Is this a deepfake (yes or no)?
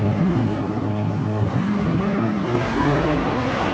yes